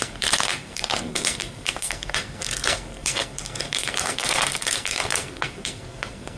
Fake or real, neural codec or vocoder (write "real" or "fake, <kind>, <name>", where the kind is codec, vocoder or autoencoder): fake, codec, SNAC